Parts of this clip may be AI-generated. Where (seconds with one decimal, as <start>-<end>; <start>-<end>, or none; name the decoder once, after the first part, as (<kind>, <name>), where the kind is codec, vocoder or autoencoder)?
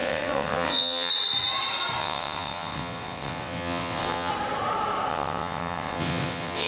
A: 0.0-1.1 (vocoder, WaveNeXt); 2.0-4.3; 5.1-6.7